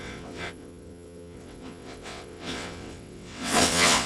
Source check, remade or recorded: remade